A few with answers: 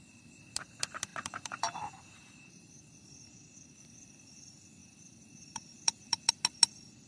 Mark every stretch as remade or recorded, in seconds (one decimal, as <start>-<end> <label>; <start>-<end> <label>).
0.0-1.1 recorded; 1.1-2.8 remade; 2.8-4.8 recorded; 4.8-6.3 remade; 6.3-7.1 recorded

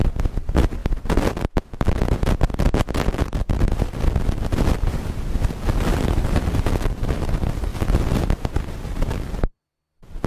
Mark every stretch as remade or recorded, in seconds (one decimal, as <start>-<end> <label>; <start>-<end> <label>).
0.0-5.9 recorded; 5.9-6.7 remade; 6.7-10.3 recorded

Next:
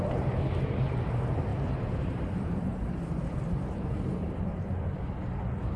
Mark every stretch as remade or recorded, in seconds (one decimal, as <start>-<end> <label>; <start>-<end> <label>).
0.0-1.5 recorded; 1.5-4.4 remade; 4.4-5.8 recorded